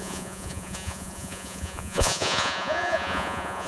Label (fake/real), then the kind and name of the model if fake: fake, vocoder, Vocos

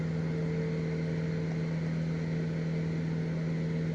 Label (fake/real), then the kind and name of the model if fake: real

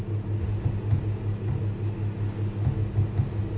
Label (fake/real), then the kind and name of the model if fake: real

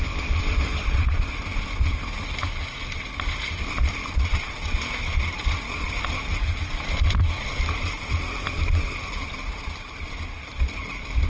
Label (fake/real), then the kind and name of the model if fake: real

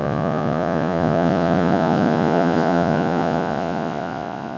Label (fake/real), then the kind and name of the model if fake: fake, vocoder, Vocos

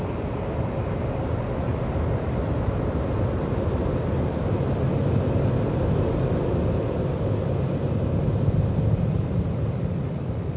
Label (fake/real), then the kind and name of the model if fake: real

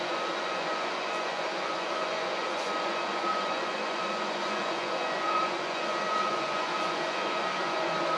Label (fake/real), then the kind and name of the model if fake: fake, vocoder, Vocos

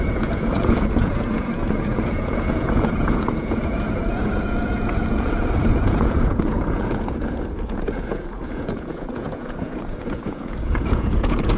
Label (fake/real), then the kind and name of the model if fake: fake, vocoder, Vocos